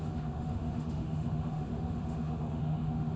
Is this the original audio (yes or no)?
no